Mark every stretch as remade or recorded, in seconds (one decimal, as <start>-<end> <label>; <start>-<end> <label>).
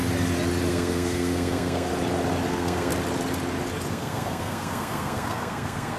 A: 0.0-0.7 recorded; 0.7-1.9 remade; 1.9-2.5 recorded; 2.5-2.9 remade; 2.9-3.9 recorded; 3.9-6.0 remade